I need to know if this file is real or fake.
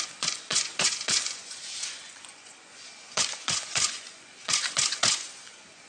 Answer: fake